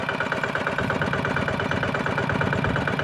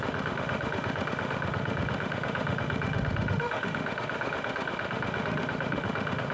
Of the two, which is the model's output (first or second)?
second